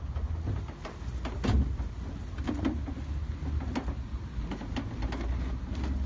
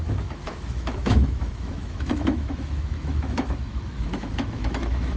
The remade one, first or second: second